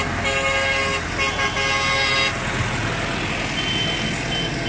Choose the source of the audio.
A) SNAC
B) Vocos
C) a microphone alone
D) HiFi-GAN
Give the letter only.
C